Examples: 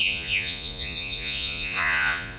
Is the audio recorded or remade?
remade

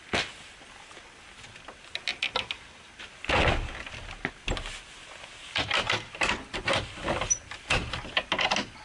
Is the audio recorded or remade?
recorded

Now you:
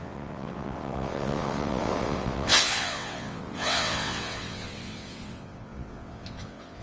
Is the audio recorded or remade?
remade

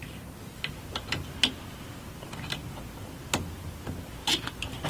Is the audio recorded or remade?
recorded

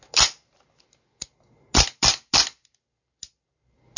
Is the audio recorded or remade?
recorded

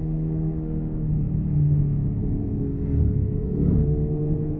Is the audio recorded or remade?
remade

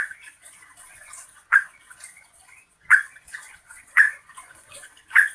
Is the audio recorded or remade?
remade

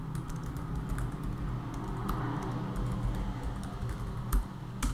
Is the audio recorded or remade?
recorded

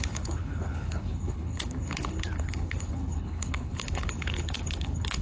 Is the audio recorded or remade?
remade